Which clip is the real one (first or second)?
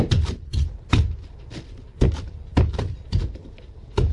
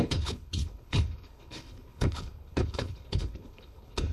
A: first